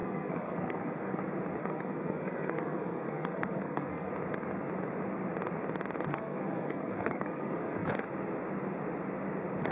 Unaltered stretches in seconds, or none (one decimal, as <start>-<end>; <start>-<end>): 1.2-1.6; 4.1-6.1; 7.9-9.7